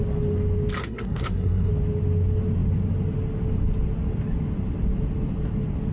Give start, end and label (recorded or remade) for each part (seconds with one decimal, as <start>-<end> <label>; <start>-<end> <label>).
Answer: 0.0-0.8 recorded; 0.8-1.7 remade; 1.7-5.9 recorded